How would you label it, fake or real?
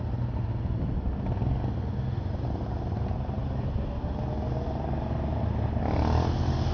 real